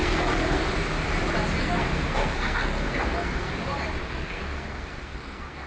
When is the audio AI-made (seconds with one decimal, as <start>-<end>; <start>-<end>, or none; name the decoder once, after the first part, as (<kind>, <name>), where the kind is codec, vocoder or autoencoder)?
0.0-0.6 (codec, SNAC); 1.6-3.5; 4.0-5.7